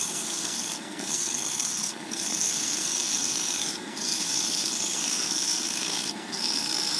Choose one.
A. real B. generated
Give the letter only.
B